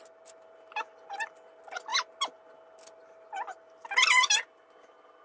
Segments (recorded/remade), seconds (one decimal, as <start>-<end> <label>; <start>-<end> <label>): 0.0-5.2 recorded